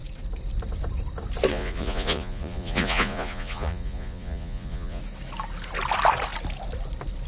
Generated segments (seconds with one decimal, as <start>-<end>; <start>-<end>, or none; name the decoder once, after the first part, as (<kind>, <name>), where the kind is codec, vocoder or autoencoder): 1.5-5.0 (vocoder, Vocos)